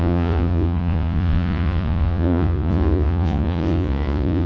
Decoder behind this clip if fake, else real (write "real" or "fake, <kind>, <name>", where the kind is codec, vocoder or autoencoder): fake, vocoder, Vocos